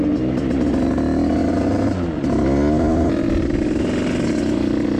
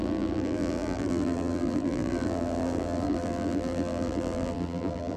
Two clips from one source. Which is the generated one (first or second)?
second